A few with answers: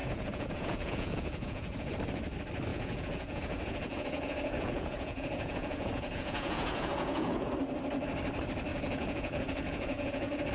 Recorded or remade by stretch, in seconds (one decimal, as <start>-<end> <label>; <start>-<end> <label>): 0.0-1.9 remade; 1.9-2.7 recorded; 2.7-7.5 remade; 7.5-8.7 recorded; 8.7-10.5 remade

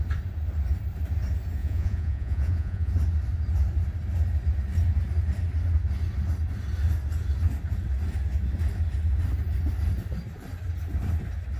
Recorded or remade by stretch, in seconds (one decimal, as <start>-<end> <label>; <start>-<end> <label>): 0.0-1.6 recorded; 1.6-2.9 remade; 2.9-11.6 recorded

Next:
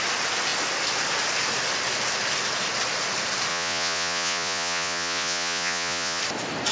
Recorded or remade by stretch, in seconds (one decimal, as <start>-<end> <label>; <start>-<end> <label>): 0.0-3.5 recorded; 3.5-6.2 remade; 6.2-6.7 recorded